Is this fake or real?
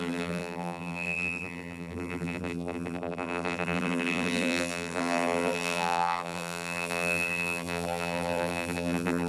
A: fake